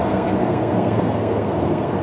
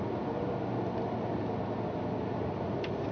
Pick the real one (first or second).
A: second